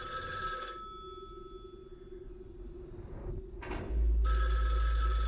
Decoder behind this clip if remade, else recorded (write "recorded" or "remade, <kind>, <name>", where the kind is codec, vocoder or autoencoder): recorded